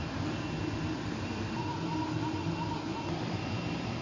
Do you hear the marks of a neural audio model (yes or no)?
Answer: yes